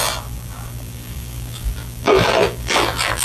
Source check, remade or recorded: remade